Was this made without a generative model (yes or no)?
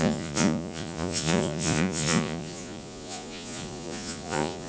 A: no